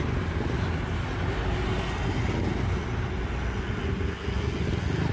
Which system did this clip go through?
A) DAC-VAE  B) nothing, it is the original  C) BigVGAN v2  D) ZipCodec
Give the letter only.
B